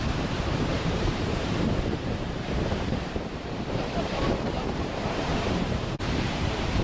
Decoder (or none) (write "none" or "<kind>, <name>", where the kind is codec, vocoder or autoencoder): vocoder, BigVGAN v2